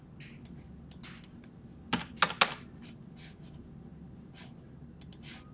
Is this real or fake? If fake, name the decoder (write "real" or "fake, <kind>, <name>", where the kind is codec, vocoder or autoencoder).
real